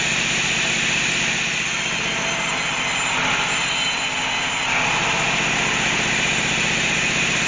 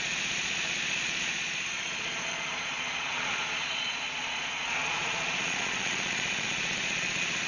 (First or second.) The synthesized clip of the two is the second